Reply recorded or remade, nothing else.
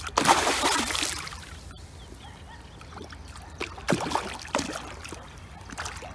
recorded